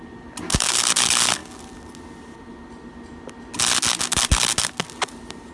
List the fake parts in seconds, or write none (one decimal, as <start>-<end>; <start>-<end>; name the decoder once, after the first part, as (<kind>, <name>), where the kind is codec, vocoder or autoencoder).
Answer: none